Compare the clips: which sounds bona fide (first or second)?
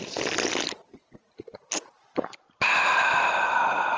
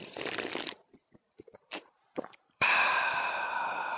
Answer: first